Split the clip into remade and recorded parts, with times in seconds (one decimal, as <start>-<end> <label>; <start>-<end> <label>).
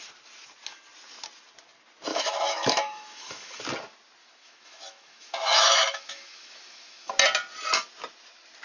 0.0-2.1 recorded; 2.1-3.6 remade; 3.6-4.2 recorded; 4.2-7.1 remade; 7.1-8.6 recorded